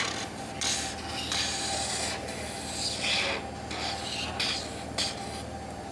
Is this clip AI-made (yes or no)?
no